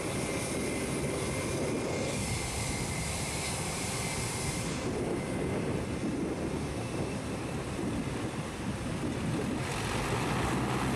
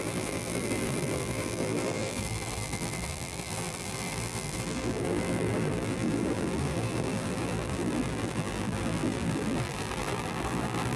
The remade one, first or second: second